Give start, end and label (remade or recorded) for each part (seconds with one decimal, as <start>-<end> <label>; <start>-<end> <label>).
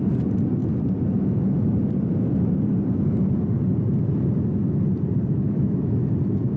0.0-5.4 recorded; 5.4-6.1 remade; 6.1-6.6 recorded